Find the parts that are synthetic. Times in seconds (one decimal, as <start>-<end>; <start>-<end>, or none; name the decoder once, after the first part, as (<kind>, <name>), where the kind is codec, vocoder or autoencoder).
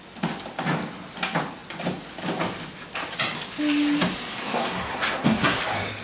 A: 4.4-5.6 (codec, SNAC)